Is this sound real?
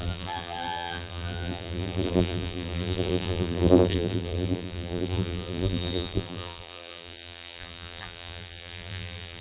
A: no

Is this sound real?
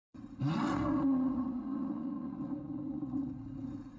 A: no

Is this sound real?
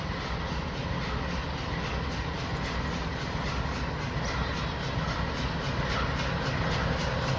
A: yes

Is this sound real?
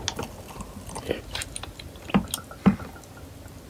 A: yes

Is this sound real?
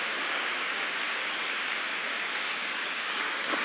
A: no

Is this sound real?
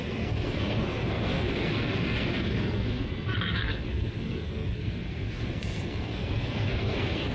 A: no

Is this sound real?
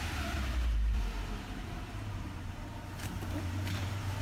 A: no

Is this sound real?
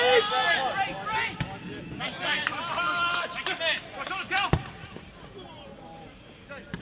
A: yes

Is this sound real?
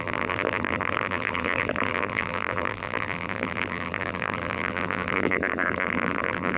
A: no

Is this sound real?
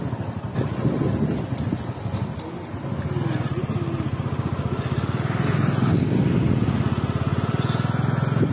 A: yes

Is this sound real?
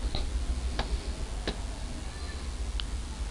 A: yes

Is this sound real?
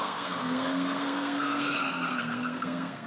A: no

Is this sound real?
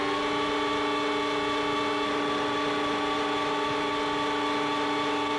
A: yes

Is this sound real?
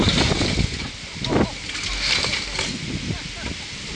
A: yes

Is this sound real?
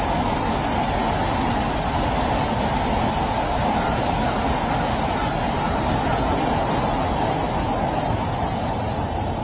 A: yes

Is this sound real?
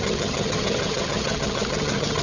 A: no